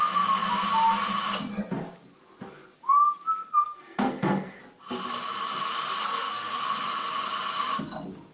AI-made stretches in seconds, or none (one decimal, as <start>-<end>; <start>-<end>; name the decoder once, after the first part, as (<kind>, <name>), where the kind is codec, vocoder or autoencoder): 3.4-4.6 (codec, SNAC); 6.0-6.6